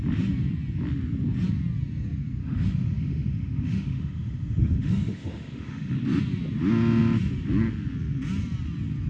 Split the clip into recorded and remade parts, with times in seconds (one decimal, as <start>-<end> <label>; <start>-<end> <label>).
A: 0.0-2.4 recorded; 2.4-5.9 remade; 5.9-9.1 recorded